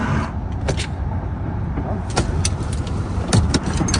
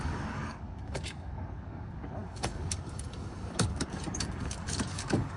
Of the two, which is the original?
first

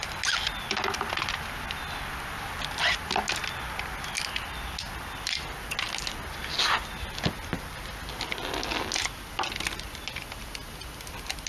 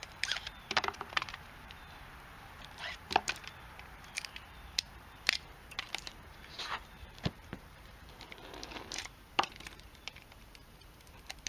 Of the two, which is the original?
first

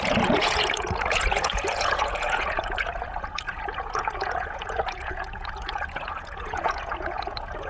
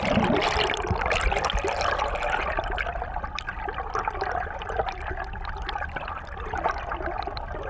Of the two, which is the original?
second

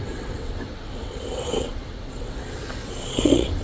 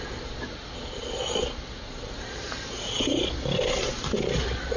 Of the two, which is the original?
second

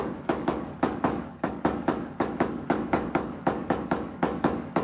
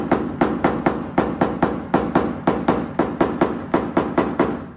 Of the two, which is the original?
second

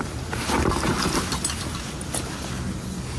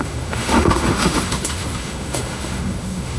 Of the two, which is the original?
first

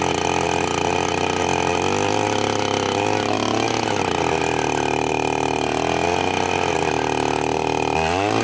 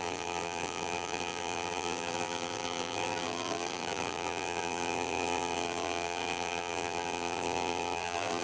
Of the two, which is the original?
first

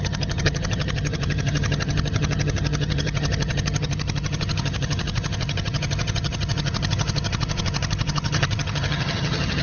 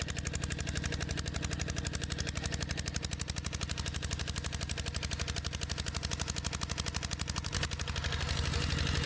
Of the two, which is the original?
second